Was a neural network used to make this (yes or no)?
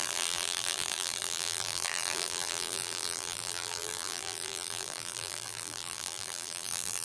yes